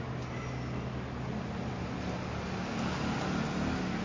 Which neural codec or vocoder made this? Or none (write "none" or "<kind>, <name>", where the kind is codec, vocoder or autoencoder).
none